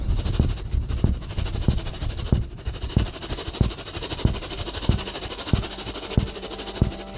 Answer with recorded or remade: recorded